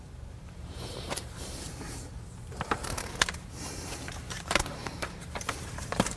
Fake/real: fake